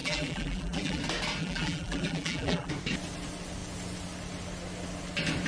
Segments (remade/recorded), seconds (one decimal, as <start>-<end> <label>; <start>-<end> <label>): 0.0-1.0 remade; 1.0-1.4 recorded; 1.4-2.7 remade; 2.7-5.5 recorded